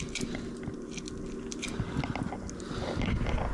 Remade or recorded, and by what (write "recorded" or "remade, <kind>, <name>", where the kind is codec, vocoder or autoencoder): recorded